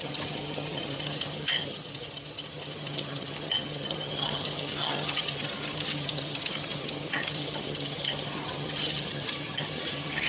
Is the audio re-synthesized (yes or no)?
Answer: yes